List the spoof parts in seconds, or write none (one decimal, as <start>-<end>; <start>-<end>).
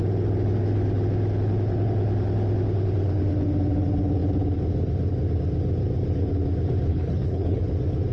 6.9-7.6